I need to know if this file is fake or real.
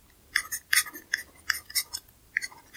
fake